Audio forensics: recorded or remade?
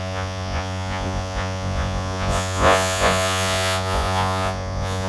remade